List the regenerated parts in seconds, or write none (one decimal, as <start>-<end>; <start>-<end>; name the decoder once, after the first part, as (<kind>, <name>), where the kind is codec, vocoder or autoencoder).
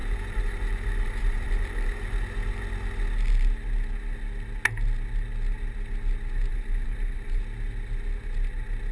0.0-2.2 (vocoder, BigVGAN v2); 6.5-7.4